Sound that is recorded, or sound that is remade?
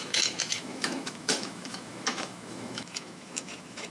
remade